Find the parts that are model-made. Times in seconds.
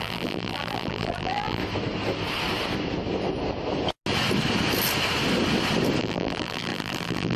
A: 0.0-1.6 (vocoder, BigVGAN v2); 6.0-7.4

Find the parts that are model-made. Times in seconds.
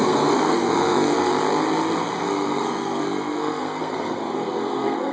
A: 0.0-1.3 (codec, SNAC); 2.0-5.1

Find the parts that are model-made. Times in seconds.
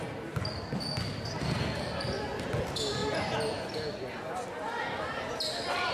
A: 1.4-1.9 (codec, SNAC)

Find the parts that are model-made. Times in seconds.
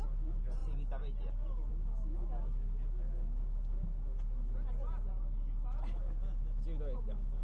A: none